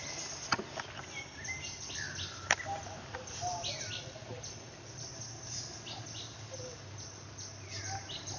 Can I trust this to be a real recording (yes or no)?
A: yes